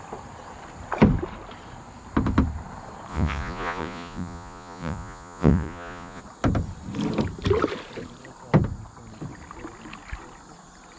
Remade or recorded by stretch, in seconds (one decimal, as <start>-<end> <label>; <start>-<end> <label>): 0.0-3.1 recorded; 3.1-6.2 remade; 6.2-11.0 recorded